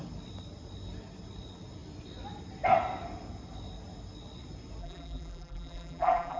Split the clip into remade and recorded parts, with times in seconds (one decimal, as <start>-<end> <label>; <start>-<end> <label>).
0.0-4.8 recorded; 4.8-6.4 remade

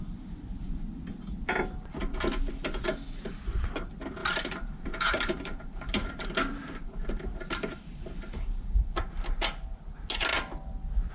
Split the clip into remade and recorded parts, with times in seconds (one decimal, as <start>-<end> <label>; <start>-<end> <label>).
0.0-4.2 recorded; 4.2-8.9 remade; 8.9-11.1 recorded

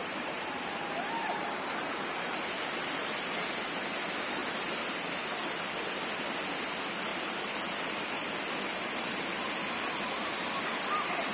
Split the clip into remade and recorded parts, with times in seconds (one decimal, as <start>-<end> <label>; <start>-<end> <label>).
0.0-3.1 remade; 3.1-7.1 recorded; 7.1-8.0 remade; 8.0-8.7 recorded; 8.7-9.5 remade; 9.5-11.3 recorded